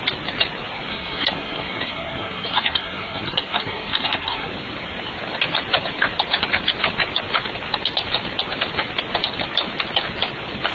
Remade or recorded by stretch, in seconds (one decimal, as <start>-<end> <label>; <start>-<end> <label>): 0.0-0.9 recorded; 0.9-4.5 remade; 4.5-10.7 recorded